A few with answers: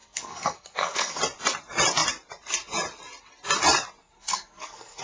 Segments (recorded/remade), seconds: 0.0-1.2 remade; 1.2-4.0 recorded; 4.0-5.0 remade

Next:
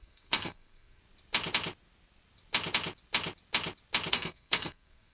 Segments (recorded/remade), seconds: 0.0-1.0 remade; 1.0-4.1 recorded; 4.1-5.1 remade

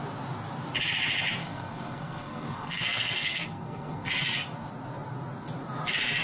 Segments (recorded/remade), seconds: 0.0-1.4 recorded; 1.4-4.1 remade; 4.1-6.2 recorded

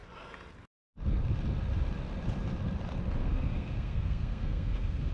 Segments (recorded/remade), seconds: 0.0-3.2 recorded; 3.2-5.1 remade

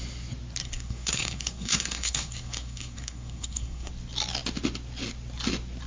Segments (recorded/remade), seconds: 0.0-0.6 recorded; 0.6-3.9 remade; 3.9-5.9 recorded

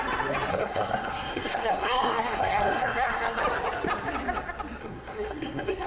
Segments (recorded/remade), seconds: 0.0-0.5 recorded; 0.5-3.4 remade; 3.4-4.8 recorded; 4.8-5.9 remade

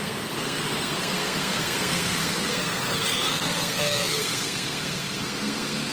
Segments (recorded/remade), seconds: 0.0-5.9 remade